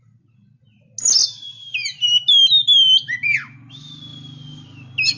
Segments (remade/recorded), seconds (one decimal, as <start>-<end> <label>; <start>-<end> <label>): 0.0-5.2 recorded